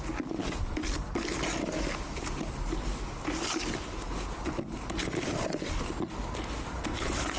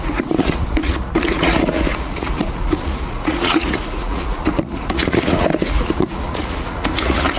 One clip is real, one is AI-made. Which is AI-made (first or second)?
second